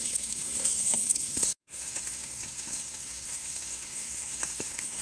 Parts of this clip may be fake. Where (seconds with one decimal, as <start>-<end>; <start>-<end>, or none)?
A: 0.0-5.0